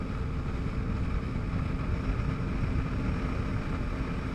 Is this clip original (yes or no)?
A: yes